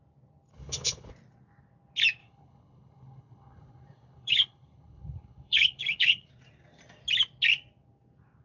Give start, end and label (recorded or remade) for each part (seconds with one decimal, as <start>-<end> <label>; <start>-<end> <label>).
0.0-0.5 recorded; 0.5-1.1 remade; 1.1-2.2 recorded; 2.2-6.3 remade; 6.3-8.4 recorded